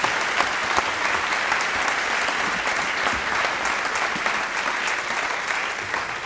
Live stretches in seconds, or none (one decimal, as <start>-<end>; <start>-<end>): 0.0-6.3